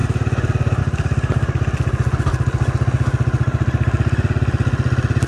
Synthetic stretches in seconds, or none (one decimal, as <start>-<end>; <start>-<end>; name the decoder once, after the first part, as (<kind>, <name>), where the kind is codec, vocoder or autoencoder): none